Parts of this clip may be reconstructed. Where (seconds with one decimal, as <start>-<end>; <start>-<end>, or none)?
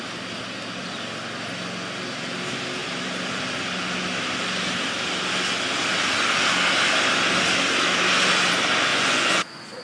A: 8.9-9.8